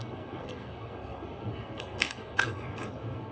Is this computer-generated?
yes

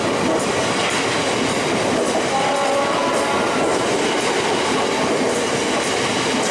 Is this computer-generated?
no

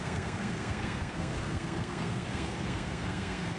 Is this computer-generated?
yes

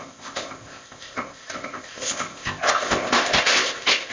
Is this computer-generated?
yes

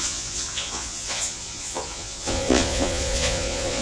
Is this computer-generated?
yes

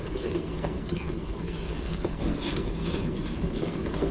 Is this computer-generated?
yes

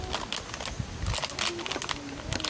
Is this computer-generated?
no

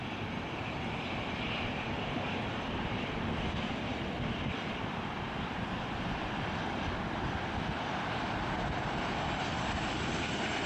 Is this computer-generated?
yes